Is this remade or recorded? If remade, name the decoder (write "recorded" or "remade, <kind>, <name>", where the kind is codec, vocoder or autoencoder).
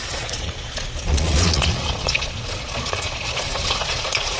remade, vocoder, Vocos